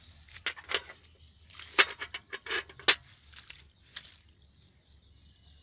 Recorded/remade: recorded